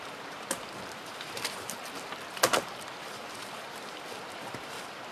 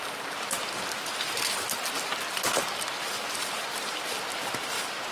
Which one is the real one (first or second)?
second